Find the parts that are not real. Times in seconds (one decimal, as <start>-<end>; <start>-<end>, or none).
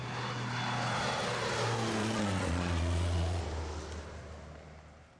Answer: 2.0-3.4